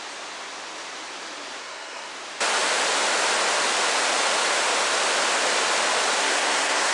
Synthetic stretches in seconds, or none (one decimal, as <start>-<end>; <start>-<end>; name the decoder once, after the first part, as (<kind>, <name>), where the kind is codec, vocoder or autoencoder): 1.6-2.1 (codec, SNAC); 6.2-6.9

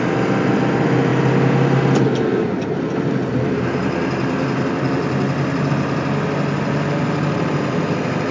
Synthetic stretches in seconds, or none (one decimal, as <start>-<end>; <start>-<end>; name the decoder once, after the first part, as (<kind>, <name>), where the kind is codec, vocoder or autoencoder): none

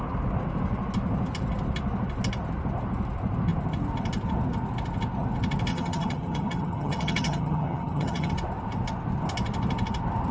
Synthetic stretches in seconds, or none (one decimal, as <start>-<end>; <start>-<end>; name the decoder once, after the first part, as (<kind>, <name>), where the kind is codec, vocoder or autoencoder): 5.7-8.3 (vocoder, HiFi-GAN)

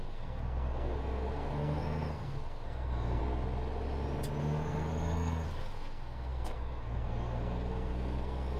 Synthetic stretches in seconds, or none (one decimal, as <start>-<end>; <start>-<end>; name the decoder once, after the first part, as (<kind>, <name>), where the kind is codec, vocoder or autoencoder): 0.0-3.2 (codec, SNAC); 4.4-8.6

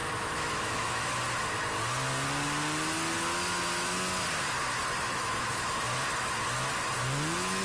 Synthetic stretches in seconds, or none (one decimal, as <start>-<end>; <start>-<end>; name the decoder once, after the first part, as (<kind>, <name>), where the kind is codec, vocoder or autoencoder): 0.0-1.1 (autoencoder, DAC-VAE); 5.1-5.8